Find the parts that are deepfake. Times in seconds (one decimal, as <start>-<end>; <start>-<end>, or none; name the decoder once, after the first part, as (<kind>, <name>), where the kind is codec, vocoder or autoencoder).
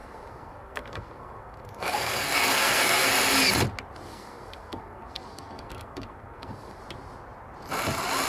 0.0-3.1 (codec, SNAC); 4.1-6.8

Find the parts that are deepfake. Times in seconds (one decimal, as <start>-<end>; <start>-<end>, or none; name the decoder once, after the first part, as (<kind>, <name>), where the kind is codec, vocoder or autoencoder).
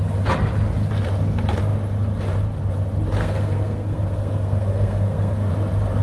3.2-5.5 (codec, SNAC)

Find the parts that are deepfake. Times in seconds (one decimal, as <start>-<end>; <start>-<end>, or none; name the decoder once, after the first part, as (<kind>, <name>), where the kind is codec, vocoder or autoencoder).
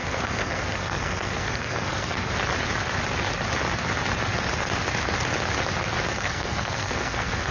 0.0-2.3 (codec, SNAC); 6.1-7.5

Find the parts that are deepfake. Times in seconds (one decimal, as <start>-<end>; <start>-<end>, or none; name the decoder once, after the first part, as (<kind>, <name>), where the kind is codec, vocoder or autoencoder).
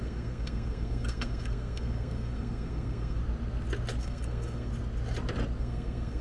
0.0-3.2 (codec, SNAC); 4.0-4.7; 5.6-6.2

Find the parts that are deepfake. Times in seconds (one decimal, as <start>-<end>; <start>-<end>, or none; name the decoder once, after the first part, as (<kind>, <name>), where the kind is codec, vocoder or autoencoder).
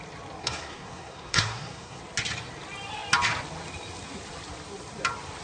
0.4-2.0 (codec, SNAC)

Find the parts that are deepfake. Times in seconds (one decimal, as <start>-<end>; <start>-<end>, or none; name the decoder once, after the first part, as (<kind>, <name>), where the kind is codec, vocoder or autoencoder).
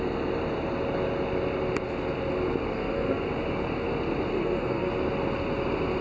2.7-3.3 (codec, SNAC); 4.3-4.9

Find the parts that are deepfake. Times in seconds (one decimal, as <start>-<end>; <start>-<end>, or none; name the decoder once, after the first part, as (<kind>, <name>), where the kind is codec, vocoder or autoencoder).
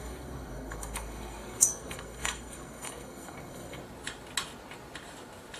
0.0-3.8 (codec, SNAC)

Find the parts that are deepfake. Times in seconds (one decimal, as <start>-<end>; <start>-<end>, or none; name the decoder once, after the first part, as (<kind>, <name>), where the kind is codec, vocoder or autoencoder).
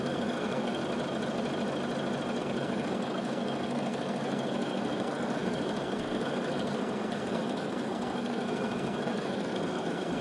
0.0-0.8 (codec, SNAC); 2.4-10.2